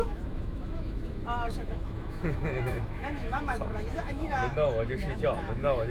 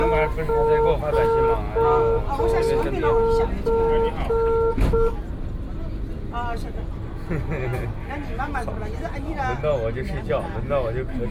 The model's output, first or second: first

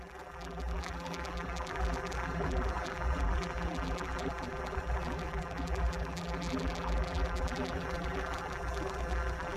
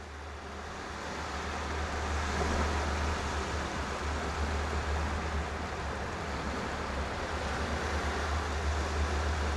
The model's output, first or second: first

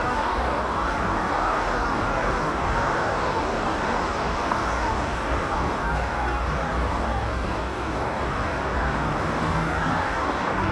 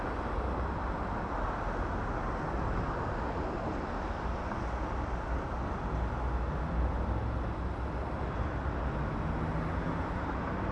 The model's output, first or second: first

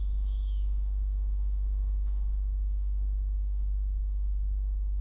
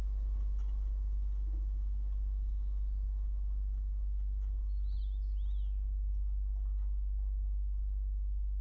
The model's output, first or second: first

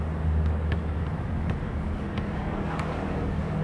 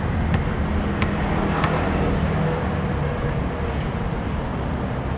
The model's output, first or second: first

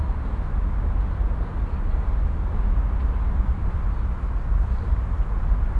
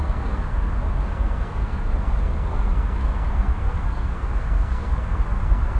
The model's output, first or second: second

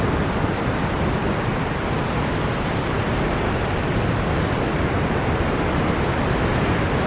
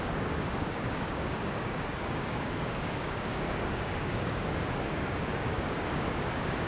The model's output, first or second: second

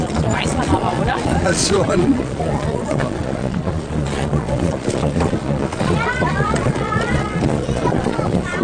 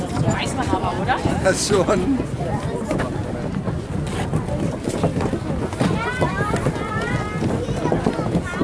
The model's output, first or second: first